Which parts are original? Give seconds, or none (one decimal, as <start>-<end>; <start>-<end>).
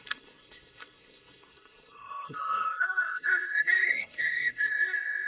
none